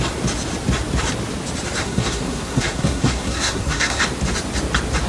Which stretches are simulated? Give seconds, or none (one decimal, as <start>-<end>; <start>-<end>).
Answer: 1.8-4.0